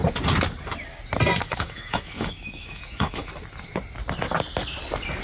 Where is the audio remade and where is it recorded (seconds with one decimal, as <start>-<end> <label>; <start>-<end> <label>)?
0.0-1.5 recorded; 1.5-3.3 remade; 3.3-5.2 recorded

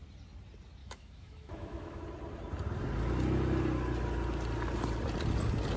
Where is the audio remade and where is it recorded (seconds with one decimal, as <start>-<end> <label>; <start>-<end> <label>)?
0.0-0.8 recorded; 0.8-2.0 remade; 2.0-5.8 recorded

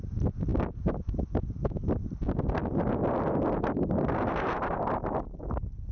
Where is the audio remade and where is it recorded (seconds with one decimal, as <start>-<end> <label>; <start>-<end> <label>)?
0.0-5.9 recorded

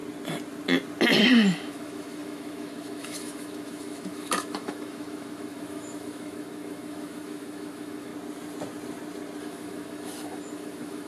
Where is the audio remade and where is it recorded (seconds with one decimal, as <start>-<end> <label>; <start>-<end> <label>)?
0.0-1.3 recorded; 1.3-8.1 remade; 8.1-9.4 recorded; 9.4-11.1 remade